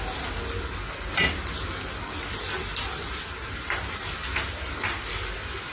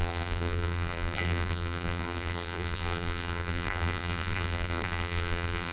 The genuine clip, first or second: first